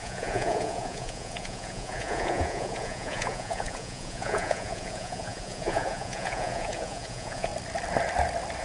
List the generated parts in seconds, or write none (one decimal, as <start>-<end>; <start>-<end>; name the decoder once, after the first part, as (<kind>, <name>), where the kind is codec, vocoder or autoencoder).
0.0-7.5 (vocoder, Vocos)